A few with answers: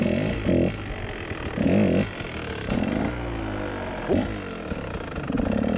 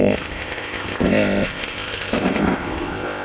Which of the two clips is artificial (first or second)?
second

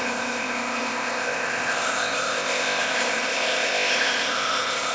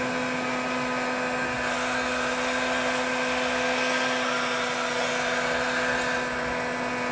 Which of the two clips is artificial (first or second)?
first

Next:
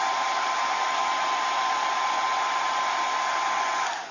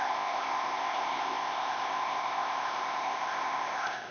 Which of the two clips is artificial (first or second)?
second